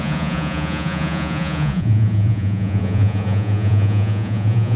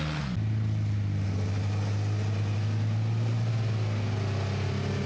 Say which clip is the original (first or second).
second